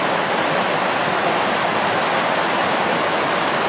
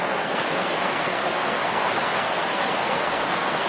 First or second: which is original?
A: first